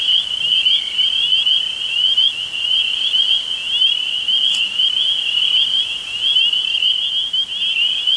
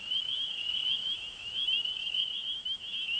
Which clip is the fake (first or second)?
second